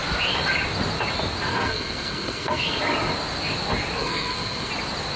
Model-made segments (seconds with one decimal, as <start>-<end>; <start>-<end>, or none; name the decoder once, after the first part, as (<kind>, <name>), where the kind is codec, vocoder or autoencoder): 1.5-2.8 (codec, SNAC); 4.0-4.7